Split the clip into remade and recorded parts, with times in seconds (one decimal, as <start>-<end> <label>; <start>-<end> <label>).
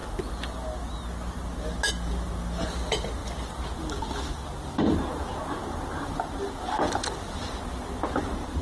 0.0-8.6 recorded